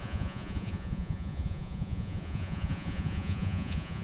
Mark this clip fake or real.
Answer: fake